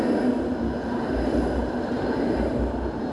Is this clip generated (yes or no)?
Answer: yes